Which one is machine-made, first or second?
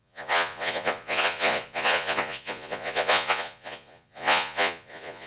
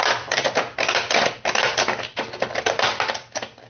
first